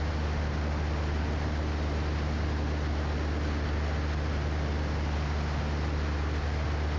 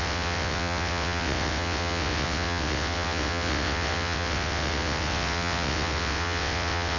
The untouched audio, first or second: first